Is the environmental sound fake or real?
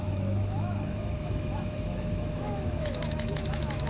fake